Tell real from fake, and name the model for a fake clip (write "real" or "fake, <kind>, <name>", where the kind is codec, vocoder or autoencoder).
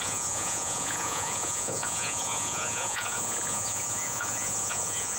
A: fake, vocoder, Vocos